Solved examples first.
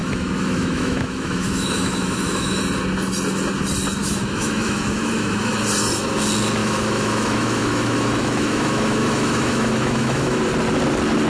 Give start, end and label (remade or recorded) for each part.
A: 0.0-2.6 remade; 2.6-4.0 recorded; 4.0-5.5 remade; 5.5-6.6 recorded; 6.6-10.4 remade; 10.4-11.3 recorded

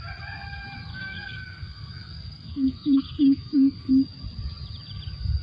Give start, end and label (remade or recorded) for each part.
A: 0.0-0.9 recorded; 0.9-3.9 remade; 3.9-5.4 recorded

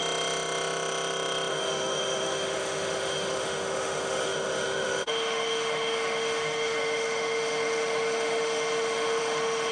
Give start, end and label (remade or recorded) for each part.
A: 0.0-1.5 recorded; 1.5-9.7 remade

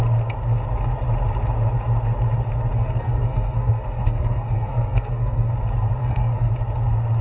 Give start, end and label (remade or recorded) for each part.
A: 0.0-2.7 recorded; 2.7-5.5 remade; 5.5-6.0 recorded; 6.0-6.5 remade; 6.5-7.2 recorded

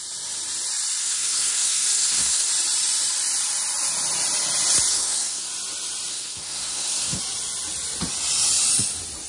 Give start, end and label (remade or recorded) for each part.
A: 0.0-1.0 recorded; 1.0-2.5 remade; 2.5-4.9 recorded; 4.9-5.5 remade; 5.5-6.1 recorded; 6.1-7.2 remade; 7.2-9.3 recorded

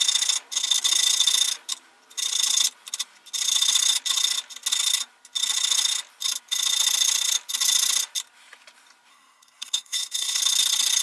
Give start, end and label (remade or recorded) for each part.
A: 0.0-9.1 recorded; 9.1-10.4 remade; 10.4-11.0 recorded